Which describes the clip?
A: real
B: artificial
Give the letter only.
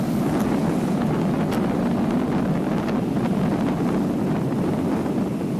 A